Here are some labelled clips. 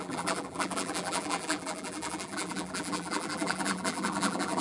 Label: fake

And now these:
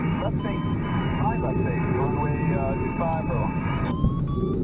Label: real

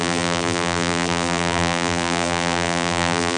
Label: fake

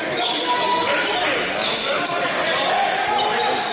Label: real